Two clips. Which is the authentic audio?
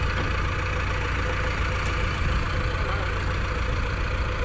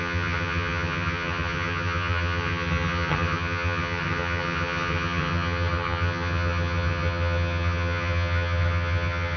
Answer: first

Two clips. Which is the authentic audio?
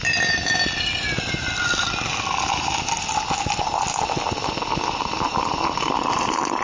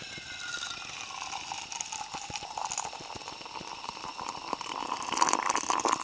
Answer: first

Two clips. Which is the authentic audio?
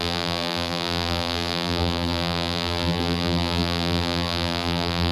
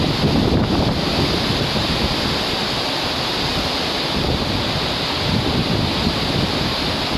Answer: second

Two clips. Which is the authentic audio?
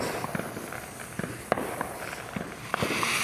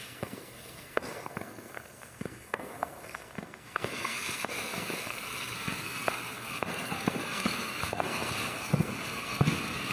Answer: first